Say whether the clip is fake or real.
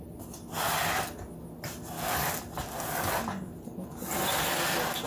real